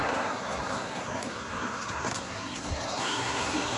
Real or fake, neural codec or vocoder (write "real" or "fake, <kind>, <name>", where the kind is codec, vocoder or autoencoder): fake, codec, SNAC